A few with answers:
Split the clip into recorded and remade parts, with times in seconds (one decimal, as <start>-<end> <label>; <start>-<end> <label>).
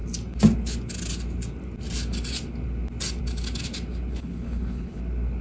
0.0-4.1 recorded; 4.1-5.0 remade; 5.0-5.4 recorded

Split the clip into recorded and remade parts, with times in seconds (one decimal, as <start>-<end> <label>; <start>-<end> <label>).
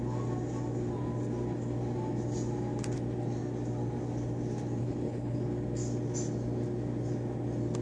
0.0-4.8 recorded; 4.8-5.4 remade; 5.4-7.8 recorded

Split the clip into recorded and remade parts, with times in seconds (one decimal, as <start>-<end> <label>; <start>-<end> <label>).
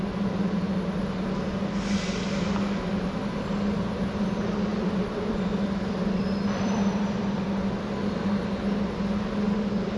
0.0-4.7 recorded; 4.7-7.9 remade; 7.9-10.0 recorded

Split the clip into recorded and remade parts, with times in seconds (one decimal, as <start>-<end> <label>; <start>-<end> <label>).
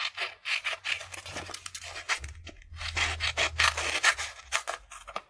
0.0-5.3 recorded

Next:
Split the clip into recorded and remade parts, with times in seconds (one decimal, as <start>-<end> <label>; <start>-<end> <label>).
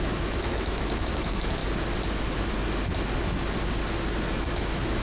0.0-1.6 remade; 1.6-4.3 recorded; 4.3-5.0 remade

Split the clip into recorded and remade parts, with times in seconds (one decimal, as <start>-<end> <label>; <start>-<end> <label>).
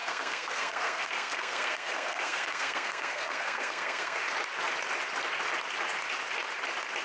0.0-4.2 remade; 4.2-7.0 recorded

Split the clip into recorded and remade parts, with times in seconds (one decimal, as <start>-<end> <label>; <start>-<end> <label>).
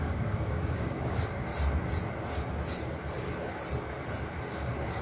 0.0-1.5 remade; 1.5-4.5 recorded; 4.5-5.0 remade